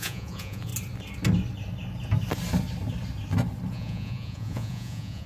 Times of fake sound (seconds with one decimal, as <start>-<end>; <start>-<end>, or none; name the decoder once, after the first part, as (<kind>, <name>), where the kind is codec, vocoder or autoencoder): 0.0-0.7 (vocoder, Vocos); 3.7-5.3